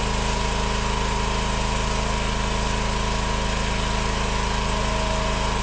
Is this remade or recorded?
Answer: recorded